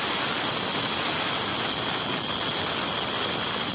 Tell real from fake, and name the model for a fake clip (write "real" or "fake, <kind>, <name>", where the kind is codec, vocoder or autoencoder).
real